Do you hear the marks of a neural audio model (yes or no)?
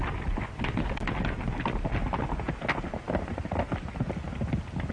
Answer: no